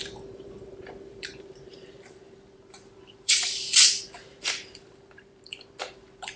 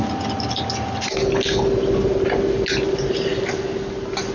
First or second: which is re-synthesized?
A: first